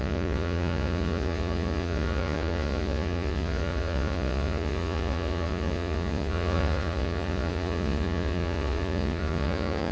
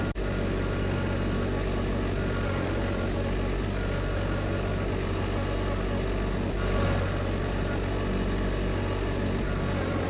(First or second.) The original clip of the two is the second